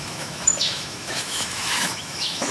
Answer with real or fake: fake